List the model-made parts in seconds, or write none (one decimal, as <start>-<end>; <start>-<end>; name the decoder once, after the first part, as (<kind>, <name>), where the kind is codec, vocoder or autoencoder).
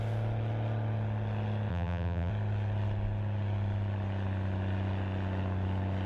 1.7-2.3 (vocoder, BigVGAN v2)